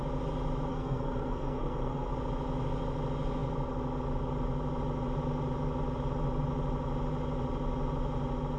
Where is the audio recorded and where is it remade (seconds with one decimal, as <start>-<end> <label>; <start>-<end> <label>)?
0.0-0.7 recorded; 0.7-2.1 remade; 2.1-8.6 recorded